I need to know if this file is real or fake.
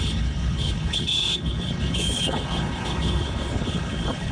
fake